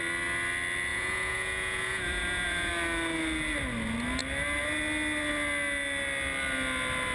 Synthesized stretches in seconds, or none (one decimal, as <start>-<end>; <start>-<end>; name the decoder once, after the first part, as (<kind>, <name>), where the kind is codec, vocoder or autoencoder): 0.9-2.7 (vocoder, Vocos)